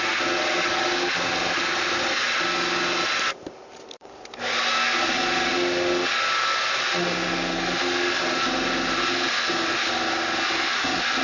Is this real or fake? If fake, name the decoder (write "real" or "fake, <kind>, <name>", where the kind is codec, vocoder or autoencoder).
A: real